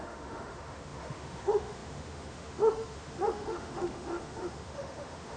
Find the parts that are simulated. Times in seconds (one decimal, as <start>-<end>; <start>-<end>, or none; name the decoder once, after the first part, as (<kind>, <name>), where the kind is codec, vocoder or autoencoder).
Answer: 0.0-5.4 (autoencoder, DAC-VAE)